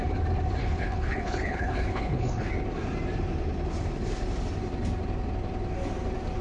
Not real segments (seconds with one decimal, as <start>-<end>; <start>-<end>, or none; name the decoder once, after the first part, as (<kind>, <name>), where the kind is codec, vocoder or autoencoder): 0.6-2.5 (codec, HILCodec)